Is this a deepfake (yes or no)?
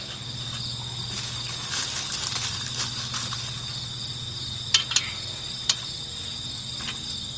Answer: no